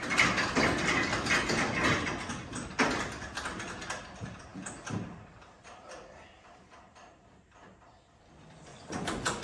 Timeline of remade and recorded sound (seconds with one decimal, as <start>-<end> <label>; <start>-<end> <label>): 0.0-8.7 recorded; 8.7-9.4 remade